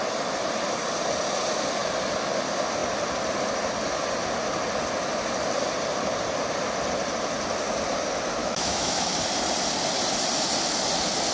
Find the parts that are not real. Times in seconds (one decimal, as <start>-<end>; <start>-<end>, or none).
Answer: 8.4-9.2